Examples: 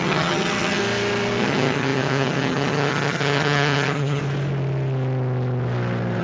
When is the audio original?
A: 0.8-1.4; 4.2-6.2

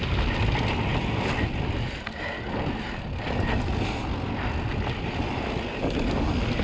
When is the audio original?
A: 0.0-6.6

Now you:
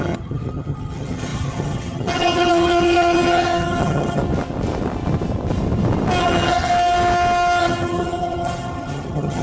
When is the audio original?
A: 4.2-6.2; 6.7-7.6